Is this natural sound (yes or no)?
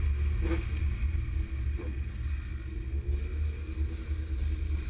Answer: yes